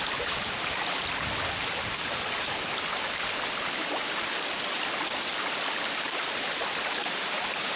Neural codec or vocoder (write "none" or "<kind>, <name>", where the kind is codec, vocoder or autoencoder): none